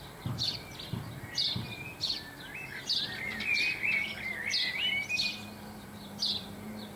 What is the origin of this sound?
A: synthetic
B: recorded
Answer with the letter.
B